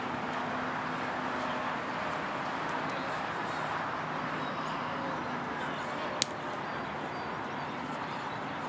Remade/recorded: recorded